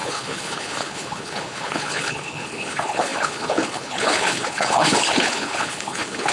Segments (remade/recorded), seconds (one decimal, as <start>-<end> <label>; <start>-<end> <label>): 0.0-6.3 remade